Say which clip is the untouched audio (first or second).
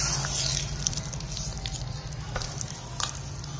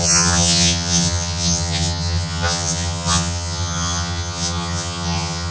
first